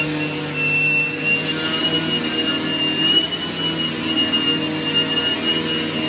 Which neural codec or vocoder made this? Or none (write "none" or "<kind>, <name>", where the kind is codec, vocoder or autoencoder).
none